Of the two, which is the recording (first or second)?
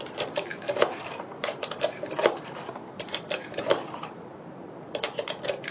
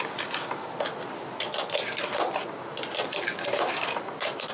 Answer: second